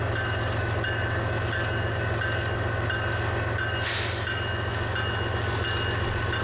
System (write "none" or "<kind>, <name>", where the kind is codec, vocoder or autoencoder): none